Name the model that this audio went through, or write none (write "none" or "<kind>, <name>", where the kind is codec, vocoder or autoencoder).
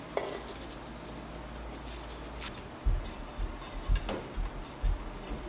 none